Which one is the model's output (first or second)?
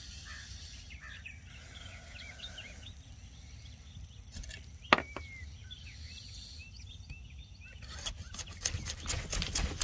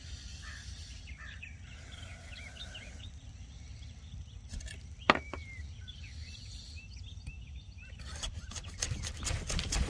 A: second